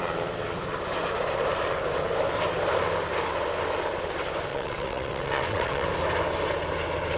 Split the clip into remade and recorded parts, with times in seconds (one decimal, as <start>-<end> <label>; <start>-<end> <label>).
0.0-4.5 recorded; 4.5-5.9 remade; 5.9-7.2 recorded